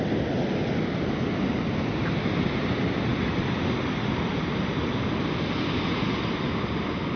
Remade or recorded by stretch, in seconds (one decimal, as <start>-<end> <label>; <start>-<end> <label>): 0.0-7.2 recorded